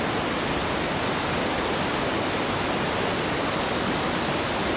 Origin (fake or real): real